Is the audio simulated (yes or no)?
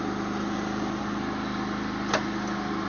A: no